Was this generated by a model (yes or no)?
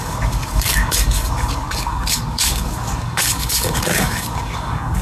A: yes